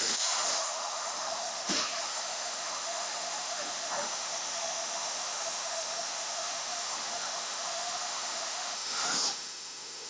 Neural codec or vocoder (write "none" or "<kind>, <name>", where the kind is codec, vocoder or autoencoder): autoencoder, DAC-VAE